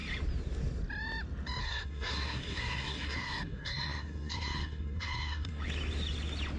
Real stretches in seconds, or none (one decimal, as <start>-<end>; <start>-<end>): 0.0-1.6; 5.6-6.6